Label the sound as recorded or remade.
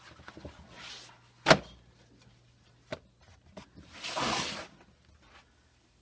recorded